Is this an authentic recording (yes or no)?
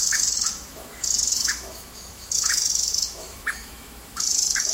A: no